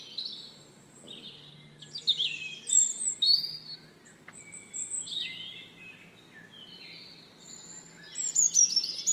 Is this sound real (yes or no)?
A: yes